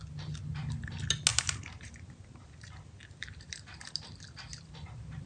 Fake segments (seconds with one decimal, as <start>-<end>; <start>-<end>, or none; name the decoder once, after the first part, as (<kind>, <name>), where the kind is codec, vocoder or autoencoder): 1.3-3.8 (vocoder, BigVGAN v2); 4.5-5.3